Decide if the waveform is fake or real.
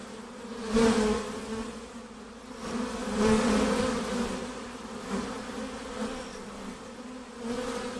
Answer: real